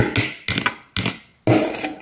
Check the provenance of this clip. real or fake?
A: real